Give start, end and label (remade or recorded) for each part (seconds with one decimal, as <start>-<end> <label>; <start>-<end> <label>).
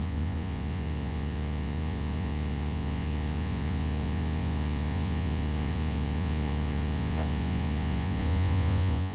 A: 0.0-9.1 remade